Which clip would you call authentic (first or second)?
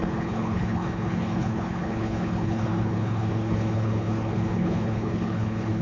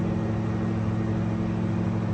second